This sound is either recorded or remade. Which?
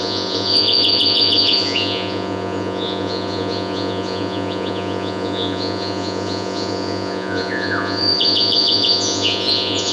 remade